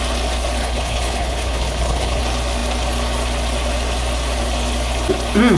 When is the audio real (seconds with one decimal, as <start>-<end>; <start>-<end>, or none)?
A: 0.0-0.6; 2.2-5.6